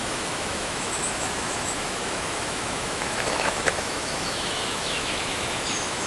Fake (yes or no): yes